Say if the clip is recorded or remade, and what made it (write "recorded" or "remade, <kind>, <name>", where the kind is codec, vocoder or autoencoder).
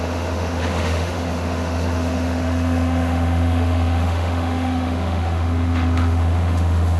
remade, autoencoder, DAC-VAE